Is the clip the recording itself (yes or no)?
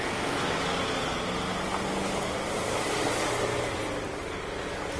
yes